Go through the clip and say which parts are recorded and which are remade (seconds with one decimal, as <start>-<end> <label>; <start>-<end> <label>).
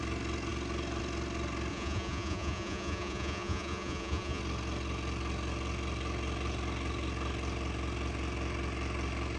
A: 0.0-1.7 recorded; 1.7-4.4 remade; 4.4-9.4 recorded